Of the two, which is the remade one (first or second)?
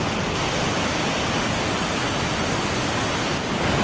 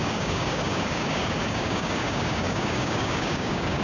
second